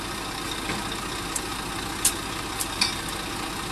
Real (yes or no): yes